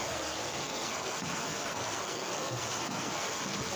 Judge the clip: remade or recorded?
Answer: remade